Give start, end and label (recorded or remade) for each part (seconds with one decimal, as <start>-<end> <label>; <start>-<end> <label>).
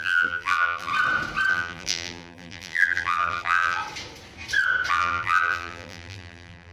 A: 0.0-0.9 remade; 0.9-1.5 recorded; 1.5-3.8 remade; 3.8-4.9 recorded; 4.9-6.7 remade